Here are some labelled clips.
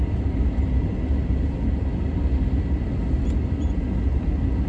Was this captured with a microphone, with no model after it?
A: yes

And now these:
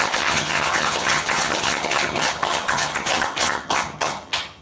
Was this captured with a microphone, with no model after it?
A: no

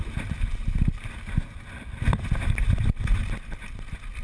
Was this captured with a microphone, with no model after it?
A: yes